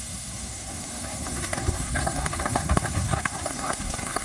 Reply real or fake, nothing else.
fake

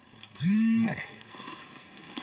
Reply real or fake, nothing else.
fake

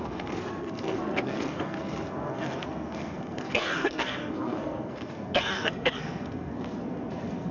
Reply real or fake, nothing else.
fake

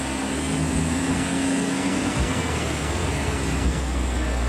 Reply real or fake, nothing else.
fake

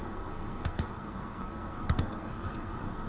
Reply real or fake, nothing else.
fake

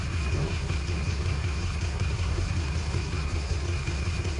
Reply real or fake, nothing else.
fake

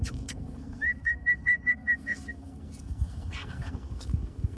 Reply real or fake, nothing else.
fake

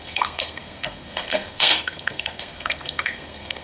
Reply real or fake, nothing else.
fake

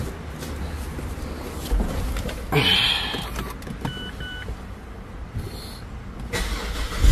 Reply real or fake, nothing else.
real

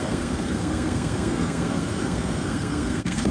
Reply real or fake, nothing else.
fake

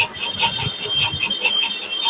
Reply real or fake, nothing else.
real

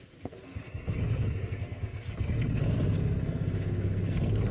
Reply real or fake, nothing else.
fake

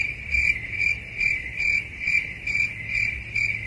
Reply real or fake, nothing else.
real